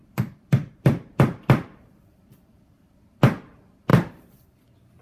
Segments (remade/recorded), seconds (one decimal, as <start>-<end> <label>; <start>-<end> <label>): 0.0-3.0 remade; 3.0-3.9 recorded; 3.9-4.5 remade; 4.5-5.0 recorded